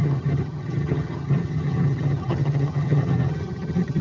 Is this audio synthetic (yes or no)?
yes